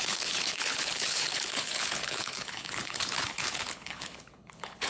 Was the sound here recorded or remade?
remade